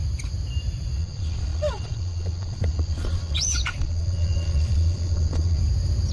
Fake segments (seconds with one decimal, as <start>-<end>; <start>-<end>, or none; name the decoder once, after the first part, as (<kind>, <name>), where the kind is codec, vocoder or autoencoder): 1.0-5.6 (vocoder, Vocos)